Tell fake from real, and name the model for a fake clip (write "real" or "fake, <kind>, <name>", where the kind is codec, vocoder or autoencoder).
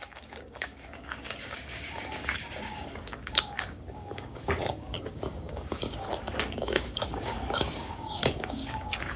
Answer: fake, codec, DAC